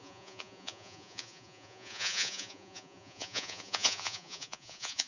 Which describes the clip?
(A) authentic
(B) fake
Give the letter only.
B